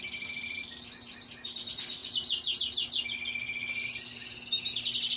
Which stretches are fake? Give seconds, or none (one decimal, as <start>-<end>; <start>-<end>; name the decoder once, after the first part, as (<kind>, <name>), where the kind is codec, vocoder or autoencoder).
none